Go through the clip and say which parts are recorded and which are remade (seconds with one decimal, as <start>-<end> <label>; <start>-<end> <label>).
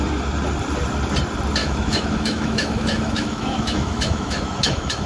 0.0-1.6 recorded; 1.6-5.1 remade